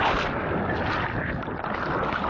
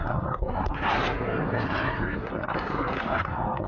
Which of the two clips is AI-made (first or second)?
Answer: second